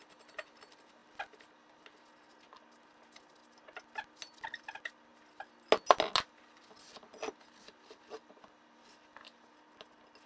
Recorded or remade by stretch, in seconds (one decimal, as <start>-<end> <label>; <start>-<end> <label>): 0.0-10.3 recorded